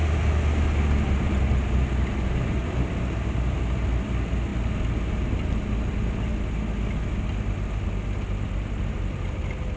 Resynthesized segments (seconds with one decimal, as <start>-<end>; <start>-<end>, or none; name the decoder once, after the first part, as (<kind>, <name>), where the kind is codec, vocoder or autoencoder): none